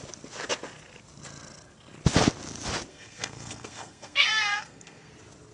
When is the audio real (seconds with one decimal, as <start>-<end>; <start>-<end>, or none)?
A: 0.0-2.9; 5.1-5.5